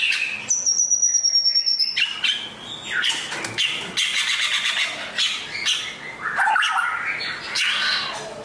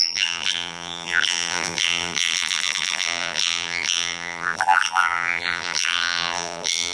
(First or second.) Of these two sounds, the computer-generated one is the second